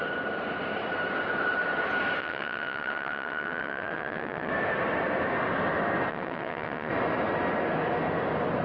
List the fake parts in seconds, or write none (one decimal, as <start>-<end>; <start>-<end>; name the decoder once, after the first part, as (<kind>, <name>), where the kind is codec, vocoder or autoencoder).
2.2-4.5 (vocoder, WaveNeXt); 6.1-6.9